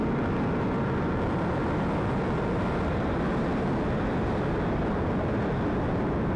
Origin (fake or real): real